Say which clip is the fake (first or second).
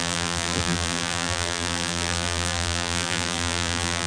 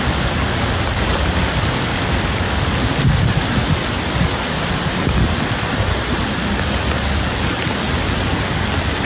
first